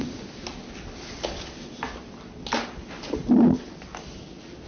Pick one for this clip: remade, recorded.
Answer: recorded